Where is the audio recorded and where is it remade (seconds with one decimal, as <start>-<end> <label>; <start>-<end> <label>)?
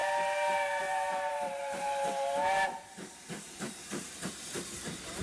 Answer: 0.0-5.2 remade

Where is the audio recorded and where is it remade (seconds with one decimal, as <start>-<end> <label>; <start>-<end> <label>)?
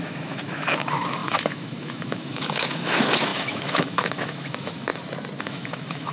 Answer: 0.0-4.9 remade; 4.9-5.4 recorded; 5.4-6.1 remade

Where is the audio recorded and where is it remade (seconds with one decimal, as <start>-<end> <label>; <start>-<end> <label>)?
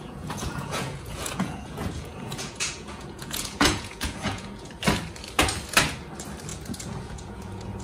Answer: 0.0-4.7 remade; 4.7-6.5 recorded; 6.5-7.8 remade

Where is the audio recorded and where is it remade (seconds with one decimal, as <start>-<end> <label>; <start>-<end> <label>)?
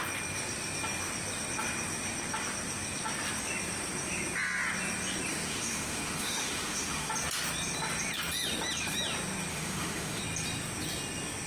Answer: 0.0-5.3 recorded; 5.3-7.1 remade; 7.1-9.5 recorded; 9.5-10.2 remade; 10.2-11.5 recorded